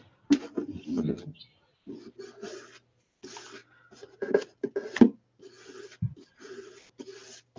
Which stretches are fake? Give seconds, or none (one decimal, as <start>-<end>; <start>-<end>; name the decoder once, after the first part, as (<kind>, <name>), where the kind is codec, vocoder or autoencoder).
0.9-1.4 (vocoder, HiFi-GAN)